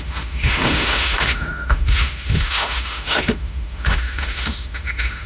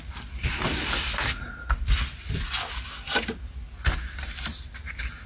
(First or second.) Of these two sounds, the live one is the second